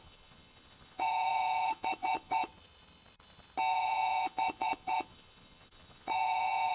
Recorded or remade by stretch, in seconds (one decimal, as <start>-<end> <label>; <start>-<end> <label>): 0.0-2.5 remade; 2.5-3.7 recorded; 3.7-6.7 remade